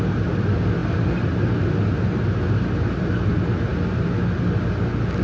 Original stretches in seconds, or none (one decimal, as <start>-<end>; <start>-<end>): 0.0-5.2